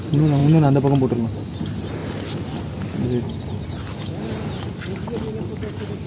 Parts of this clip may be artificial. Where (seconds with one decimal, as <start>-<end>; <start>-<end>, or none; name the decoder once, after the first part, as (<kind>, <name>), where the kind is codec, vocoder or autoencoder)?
none